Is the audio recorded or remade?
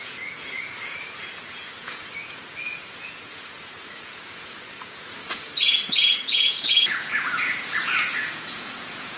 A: remade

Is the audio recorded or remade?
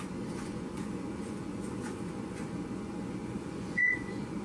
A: remade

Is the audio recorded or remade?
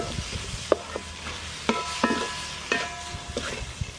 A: recorded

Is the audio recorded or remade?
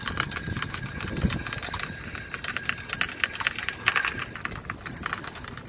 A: recorded